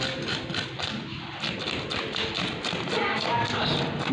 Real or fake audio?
real